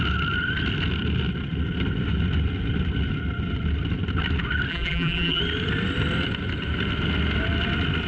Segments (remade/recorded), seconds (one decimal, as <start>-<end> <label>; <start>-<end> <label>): 0.0-4.7 recorded; 4.7-5.4 remade; 5.4-8.1 recorded